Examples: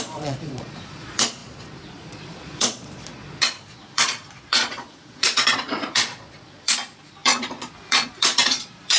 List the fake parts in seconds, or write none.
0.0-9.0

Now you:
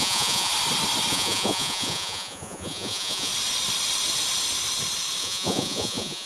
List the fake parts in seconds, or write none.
0.0-0.5; 1.1-3.3; 5.2-6.3

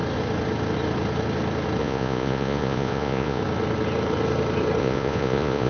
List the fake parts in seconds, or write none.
1.8-3.4; 4.8-5.7

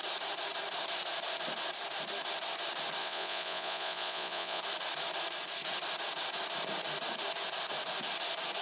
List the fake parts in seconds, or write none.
3.0-4.6

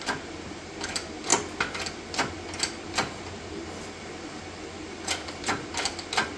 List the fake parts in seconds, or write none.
none

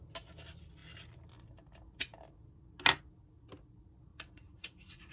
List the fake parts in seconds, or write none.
4.1-5.1